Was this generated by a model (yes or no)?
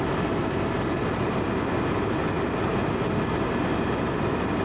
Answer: no